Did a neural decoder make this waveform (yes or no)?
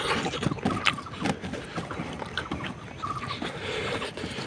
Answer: no